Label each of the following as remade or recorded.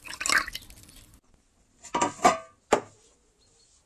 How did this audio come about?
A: recorded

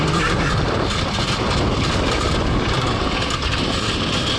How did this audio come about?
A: recorded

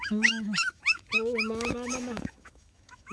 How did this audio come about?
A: remade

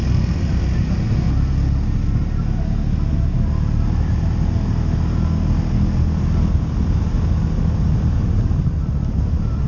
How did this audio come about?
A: recorded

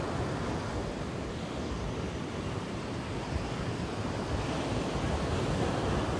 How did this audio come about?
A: recorded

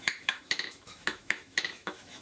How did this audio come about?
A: remade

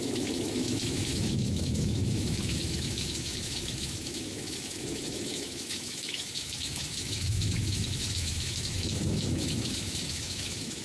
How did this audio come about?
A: remade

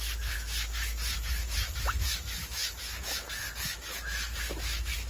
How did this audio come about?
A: remade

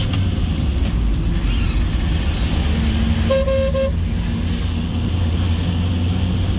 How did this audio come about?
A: recorded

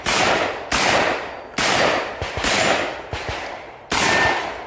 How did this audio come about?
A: recorded